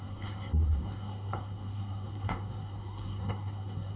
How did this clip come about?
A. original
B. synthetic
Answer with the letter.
B